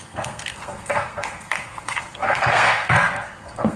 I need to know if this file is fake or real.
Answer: fake